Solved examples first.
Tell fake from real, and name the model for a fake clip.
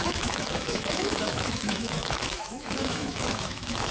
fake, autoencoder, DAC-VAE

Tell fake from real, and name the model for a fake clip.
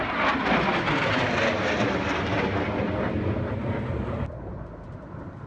real